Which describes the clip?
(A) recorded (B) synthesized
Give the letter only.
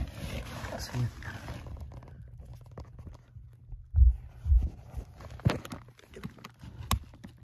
A